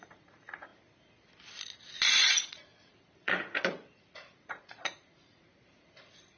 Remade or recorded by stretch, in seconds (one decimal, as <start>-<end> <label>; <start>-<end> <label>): 0.0-0.7 remade; 0.7-2.1 recorded; 2.1-6.4 remade